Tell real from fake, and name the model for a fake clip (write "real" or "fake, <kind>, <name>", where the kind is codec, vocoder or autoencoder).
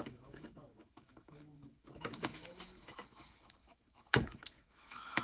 fake, autoencoder, DAC-VAE